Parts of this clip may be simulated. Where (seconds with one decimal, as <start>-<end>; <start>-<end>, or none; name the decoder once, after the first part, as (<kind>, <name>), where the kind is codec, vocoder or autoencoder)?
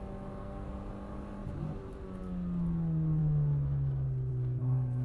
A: 0.4-0.9 (codec, SNAC)